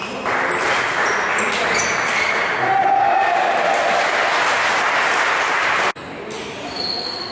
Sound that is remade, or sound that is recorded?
recorded